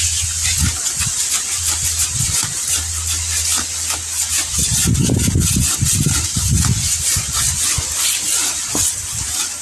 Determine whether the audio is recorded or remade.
recorded